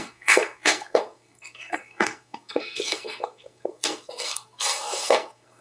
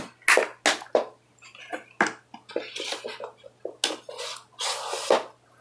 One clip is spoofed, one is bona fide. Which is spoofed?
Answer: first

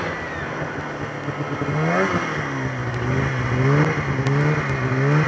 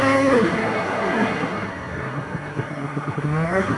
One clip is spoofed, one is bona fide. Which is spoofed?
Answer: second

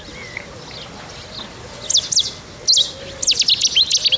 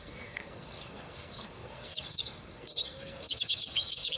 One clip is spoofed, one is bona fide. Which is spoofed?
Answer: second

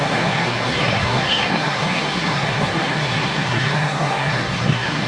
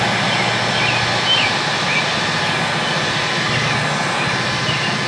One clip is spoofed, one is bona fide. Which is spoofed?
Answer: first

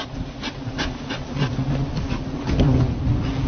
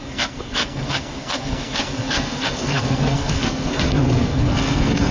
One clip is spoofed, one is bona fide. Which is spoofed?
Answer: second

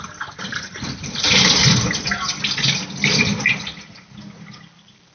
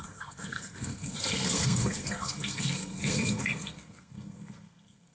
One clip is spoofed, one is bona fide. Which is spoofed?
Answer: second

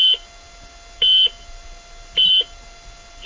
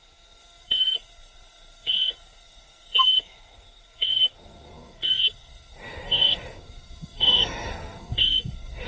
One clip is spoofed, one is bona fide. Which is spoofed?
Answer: second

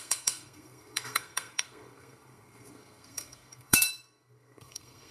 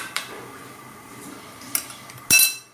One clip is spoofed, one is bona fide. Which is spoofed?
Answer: first